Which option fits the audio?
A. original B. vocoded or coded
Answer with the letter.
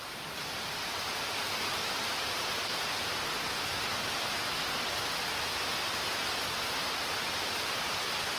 A